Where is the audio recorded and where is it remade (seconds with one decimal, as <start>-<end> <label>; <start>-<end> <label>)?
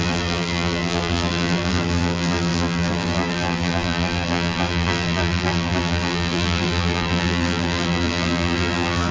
0.0-9.1 remade